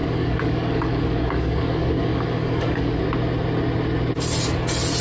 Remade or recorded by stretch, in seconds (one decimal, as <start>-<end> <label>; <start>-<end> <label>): 0.0-3.0 remade; 3.0-5.0 recorded

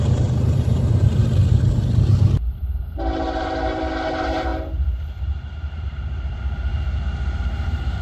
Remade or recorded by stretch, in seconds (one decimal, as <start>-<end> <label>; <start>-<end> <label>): 0.0-1.2 remade; 1.2-1.7 recorded; 1.7-4.5 remade; 4.5-5.1 recorded; 5.1-6.7 remade; 6.7-7.4 recorded; 7.4-8.0 remade

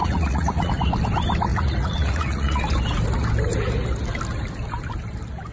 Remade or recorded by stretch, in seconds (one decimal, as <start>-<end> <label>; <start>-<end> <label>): 0.0-0.7 remade; 0.7-1.5 recorded; 1.5-2.6 remade; 2.6-5.5 recorded

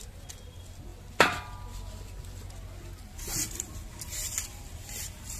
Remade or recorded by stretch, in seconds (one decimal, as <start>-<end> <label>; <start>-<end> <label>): 0.0-3.0 recorded; 3.0-4.8 remade; 4.8-5.4 recorded

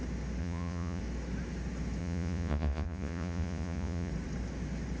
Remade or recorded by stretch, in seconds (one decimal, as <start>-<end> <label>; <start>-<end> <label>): 0.0-0.4 recorded; 0.4-1.0 remade; 1.0-2.0 recorded; 2.0-4.1 remade; 4.1-5.0 recorded

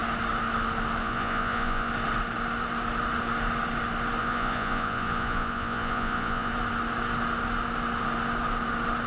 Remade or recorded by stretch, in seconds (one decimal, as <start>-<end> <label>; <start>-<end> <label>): 0.0-1.0 recorded; 1.0-1.9 remade; 1.9-4.2 recorded; 4.2-6.5 remade; 6.5-9.1 recorded

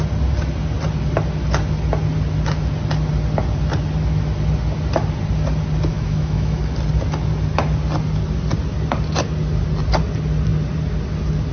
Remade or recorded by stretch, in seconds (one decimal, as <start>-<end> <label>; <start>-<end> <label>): 0.0-5.9 recorded; 5.9-6.6 remade; 6.6-11.5 recorded